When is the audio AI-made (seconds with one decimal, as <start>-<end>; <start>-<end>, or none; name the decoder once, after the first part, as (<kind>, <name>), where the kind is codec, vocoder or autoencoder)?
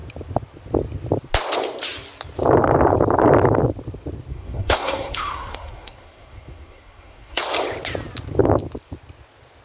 4.3-7.4 (codec, SNAC)